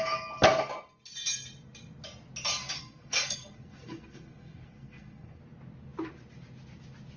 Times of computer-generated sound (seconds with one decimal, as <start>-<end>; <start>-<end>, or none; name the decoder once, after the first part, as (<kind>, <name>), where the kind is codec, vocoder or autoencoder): 2.6-5.4 (codec, SNAC)